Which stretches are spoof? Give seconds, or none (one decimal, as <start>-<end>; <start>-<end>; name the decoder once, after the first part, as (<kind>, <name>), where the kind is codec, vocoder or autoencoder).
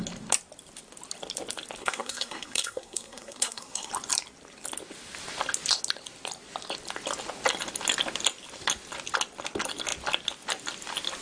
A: 1.8-3.9 (codec, SNAC)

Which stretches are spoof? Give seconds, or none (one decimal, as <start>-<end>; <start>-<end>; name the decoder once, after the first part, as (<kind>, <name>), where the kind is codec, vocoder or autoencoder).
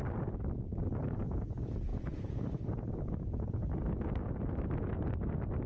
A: 0.7-1.2 (vocoder, BigVGAN v2); 1.9-3.2; 3.6-4.8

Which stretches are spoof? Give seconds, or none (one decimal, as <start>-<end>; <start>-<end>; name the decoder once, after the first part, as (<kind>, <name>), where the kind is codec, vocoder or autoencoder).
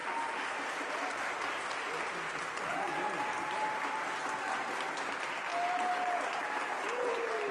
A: none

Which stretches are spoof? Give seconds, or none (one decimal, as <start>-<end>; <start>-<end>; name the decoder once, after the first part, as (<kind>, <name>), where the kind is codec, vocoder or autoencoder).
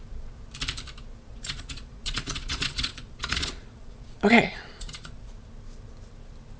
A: 1.3-5.3 (vocoder, Vocos)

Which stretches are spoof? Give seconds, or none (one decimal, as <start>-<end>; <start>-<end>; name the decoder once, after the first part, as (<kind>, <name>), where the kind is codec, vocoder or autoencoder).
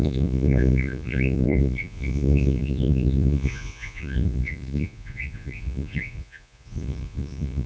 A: 0.0-7.7 (vocoder, Vocos)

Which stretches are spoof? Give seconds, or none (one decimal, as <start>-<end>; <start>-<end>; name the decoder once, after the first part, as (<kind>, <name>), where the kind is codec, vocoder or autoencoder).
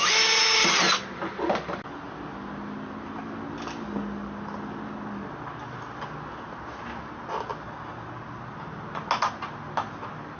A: none